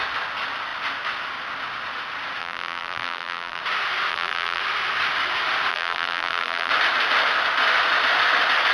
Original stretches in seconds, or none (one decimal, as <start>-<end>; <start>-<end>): 0.0-2.4; 3.6-4.1; 4.6-5.7; 6.7-8.7